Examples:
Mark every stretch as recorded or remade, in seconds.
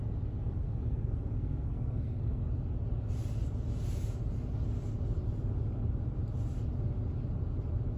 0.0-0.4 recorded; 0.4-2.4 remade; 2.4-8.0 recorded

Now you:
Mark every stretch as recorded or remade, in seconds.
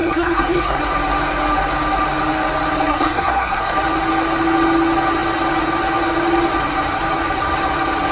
0.0-0.8 remade; 0.8-2.9 recorded; 2.9-3.7 remade; 3.7-8.1 recorded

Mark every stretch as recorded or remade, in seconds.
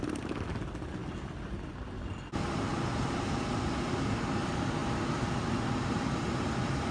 0.0-6.9 recorded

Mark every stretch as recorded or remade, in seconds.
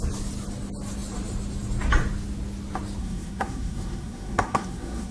0.0-3.0 recorded; 3.0-5.1 remade